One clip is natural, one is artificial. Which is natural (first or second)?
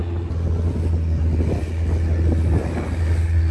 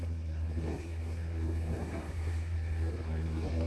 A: first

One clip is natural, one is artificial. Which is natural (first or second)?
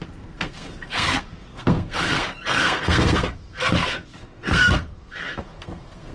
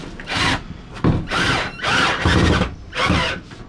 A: second